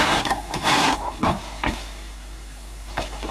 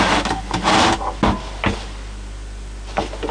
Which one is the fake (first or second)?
first